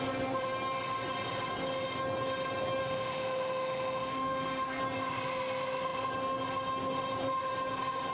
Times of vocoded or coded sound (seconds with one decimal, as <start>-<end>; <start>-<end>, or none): 2.8-4.8